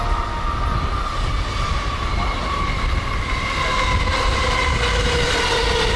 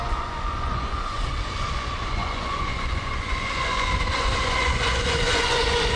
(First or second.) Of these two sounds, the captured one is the first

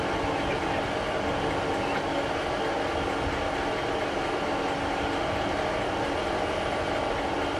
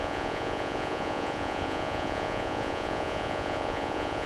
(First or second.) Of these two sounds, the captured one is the first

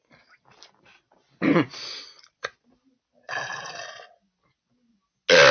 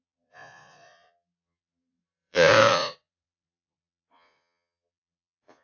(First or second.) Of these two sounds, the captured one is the first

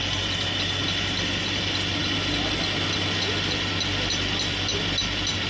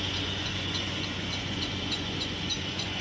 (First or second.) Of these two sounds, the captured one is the first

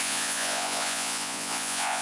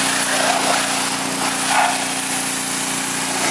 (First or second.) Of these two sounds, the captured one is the second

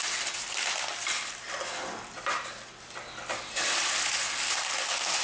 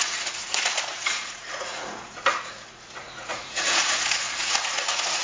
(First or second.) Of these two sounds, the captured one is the first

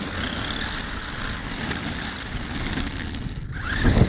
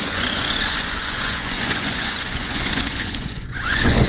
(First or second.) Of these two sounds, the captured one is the first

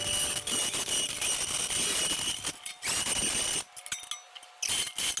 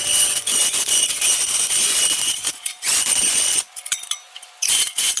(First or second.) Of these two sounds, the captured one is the first